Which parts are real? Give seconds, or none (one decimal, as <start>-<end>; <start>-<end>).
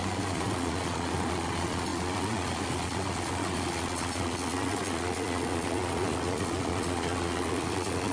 none